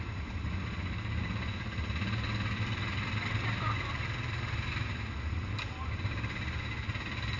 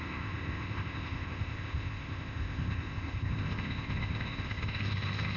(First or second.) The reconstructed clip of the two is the second